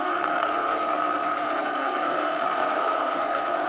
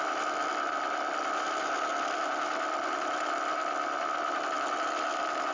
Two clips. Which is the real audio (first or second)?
second